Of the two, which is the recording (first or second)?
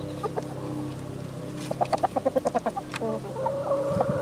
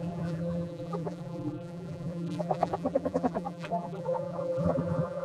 first